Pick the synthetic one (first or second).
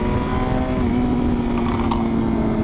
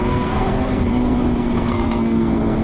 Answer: second